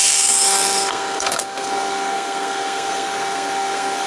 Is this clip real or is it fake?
fake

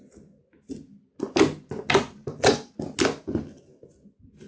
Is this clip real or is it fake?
real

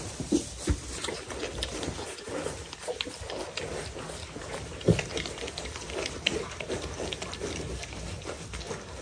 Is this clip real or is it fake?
real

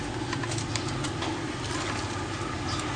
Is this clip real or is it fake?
real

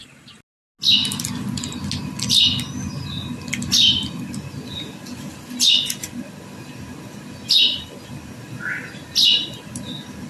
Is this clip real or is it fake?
real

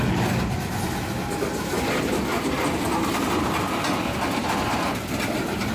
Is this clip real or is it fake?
real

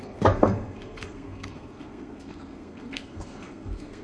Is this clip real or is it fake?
fake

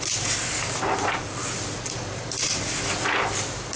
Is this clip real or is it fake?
real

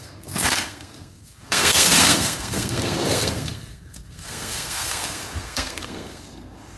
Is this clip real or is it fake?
fake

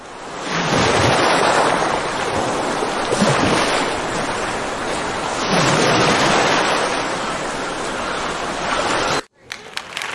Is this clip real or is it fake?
real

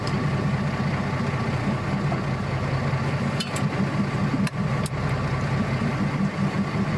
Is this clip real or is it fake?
real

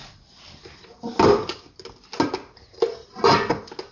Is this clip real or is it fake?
real